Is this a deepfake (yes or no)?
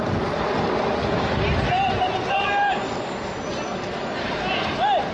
no